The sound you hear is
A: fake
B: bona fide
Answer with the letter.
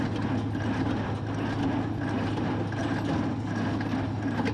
B